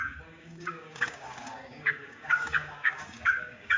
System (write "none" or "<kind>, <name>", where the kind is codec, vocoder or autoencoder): codec, DAC